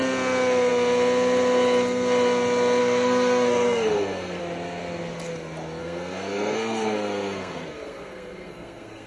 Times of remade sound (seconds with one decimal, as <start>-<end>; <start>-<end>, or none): 2.8-4.4; 5.8-9.1